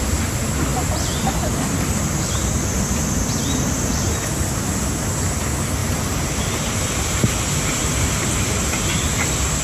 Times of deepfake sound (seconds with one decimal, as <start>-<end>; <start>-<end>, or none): 5.8-9.2